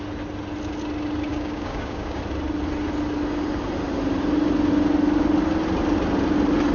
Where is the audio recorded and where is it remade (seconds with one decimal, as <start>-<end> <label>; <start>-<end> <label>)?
0.0-1.3 recorded; 1.3-2.2 remade; 2.2-6.7 recorded